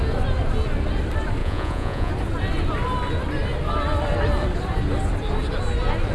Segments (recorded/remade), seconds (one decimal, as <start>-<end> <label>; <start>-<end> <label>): 0.0-1.4 recorded; 1.4-2.1 remade; 2.1-6.1 recorded

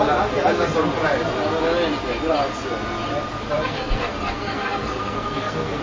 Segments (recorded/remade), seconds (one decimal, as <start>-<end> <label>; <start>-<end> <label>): 0.0-3.6 recorded; 3.6-5.8 remade

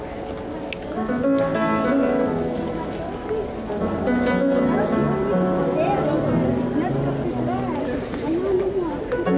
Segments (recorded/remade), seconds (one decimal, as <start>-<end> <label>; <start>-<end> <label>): 0.0-9.4 recorded

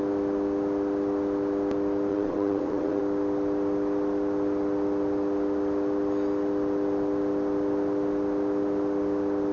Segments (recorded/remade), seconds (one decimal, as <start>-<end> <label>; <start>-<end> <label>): 0.0-2.1 recorded; 2.1-3.0 remade; 3.0-9.5 recorded

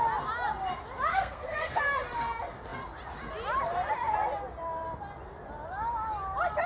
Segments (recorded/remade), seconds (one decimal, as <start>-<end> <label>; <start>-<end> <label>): 0.0-1.1 recorded; 1.1-1.8 remade; 1.8-6.7 recorded

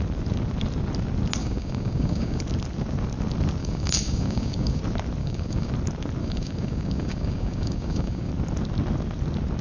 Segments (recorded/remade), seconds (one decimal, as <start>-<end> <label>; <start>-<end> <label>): 0.0-1.4 recorded; 1.4-2.4 remade; 2.4-3.6 recorded; 3.6-4.8 remade; 4.8-5.2 recorded; 5.2-5.7 remade; 5.7-6.2 recorded; 6.2-8.3 remade; 8.3-9.6 recorded